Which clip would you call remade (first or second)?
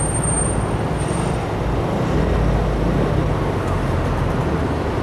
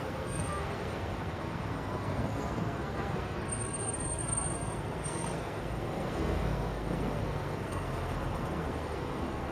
second